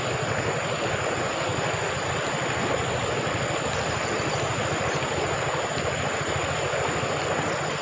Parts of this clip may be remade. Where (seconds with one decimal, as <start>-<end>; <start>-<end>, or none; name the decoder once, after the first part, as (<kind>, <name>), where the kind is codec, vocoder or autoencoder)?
none